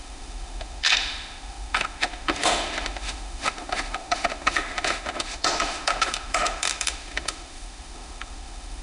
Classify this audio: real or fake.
fake